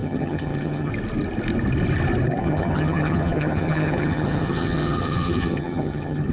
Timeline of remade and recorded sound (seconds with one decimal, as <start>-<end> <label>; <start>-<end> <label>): 0.0-0.9 remade; 0.9-2.4 recorded; 2.4-6.3 remade